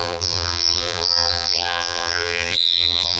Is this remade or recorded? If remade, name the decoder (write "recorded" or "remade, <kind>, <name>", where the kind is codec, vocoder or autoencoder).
remade, vocoder, BigVGAN v2